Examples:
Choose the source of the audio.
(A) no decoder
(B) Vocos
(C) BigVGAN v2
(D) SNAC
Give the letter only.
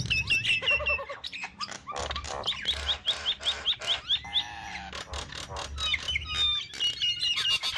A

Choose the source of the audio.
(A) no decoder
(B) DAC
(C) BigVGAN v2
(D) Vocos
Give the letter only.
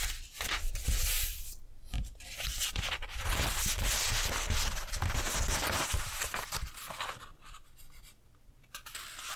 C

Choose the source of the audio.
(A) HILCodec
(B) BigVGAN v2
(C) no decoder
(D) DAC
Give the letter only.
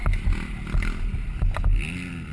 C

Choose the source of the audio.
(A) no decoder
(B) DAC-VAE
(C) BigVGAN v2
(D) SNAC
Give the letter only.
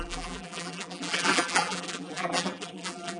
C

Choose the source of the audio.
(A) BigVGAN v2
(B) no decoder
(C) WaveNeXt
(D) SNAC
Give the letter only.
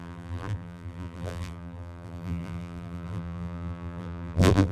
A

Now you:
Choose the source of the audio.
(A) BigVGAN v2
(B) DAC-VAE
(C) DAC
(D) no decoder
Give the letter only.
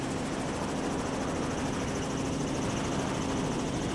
D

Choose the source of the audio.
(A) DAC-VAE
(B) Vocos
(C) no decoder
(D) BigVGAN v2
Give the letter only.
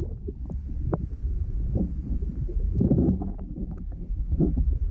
D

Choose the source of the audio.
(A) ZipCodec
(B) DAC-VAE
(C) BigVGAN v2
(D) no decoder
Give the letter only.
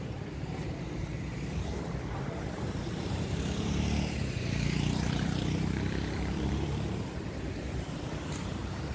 C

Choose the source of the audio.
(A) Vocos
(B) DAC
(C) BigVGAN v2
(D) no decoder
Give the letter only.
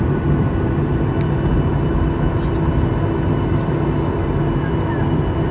D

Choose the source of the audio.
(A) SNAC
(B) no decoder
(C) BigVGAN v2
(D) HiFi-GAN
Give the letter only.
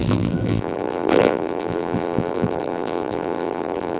C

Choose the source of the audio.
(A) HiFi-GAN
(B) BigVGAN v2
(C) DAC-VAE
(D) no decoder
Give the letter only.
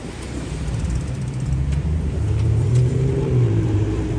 B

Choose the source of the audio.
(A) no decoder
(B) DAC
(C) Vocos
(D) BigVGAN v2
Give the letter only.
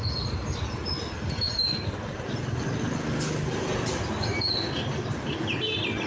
A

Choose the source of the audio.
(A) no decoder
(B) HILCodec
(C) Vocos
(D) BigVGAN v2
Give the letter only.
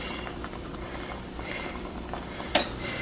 D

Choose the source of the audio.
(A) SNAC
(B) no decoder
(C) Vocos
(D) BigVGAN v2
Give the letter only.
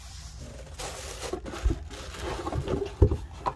B